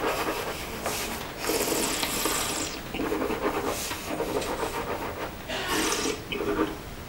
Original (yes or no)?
yes